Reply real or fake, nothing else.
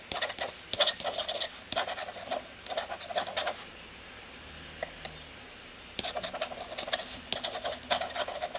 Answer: real